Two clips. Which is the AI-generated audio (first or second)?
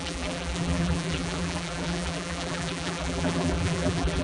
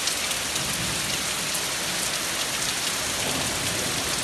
first